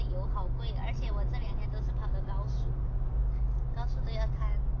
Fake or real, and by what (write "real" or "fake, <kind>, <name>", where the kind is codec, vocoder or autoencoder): real